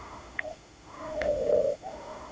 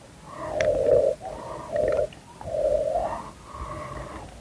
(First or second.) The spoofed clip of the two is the first